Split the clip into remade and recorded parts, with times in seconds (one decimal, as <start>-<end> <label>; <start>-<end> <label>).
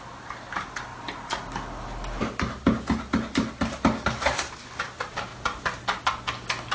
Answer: 0.0-6.7 recorded